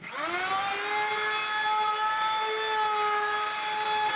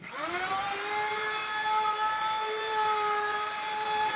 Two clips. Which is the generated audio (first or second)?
second